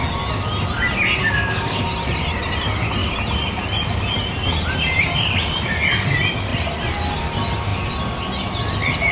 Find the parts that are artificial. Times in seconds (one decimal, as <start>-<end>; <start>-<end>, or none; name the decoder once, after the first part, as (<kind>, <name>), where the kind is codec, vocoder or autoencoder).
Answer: 1.2-1.8 (codec, DAC)